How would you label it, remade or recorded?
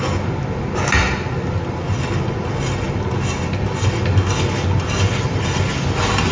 recorded